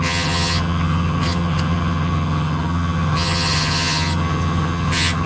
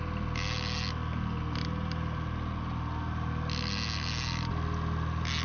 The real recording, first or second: second